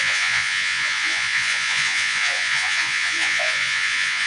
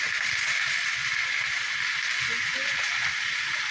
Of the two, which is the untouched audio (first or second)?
second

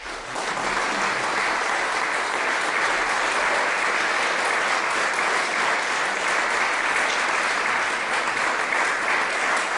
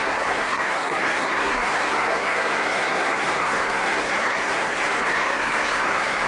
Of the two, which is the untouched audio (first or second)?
first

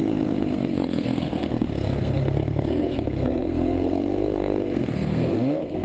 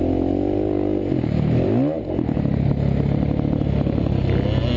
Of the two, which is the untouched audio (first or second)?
second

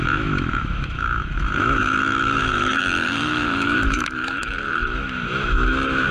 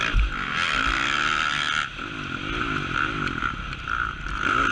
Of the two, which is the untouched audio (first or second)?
second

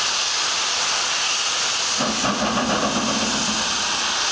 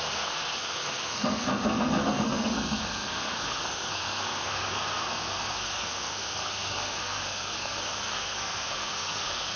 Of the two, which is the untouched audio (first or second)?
first